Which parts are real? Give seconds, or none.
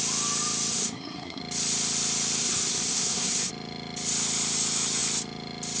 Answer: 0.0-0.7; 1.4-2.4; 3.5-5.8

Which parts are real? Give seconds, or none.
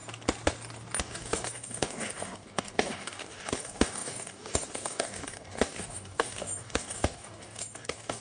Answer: 0.0-1.0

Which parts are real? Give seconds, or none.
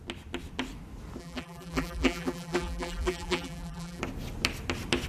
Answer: 0.0-1.2; 4.0-5.1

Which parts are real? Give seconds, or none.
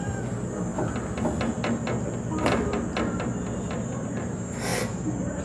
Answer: 0.0-5.4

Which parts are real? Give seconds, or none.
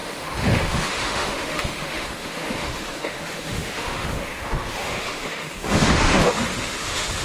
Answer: none